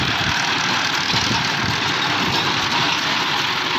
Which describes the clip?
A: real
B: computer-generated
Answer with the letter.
A